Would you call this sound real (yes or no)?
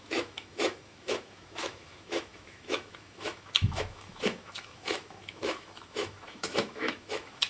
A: no